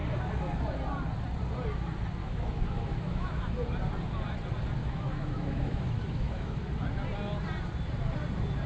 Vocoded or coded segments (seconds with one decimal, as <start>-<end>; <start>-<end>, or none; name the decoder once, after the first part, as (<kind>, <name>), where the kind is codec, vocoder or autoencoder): 2.2-3.5 (autoencoder, DAC-VAE); 4.8-6.6